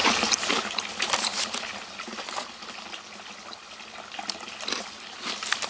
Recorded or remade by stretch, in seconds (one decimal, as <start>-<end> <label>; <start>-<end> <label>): 0.0-5.7 recorded